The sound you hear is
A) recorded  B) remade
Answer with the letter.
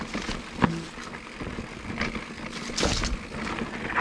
A